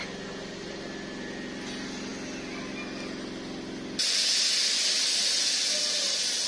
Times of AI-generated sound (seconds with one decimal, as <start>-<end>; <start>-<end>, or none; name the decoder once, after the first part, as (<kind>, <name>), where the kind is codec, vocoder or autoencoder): none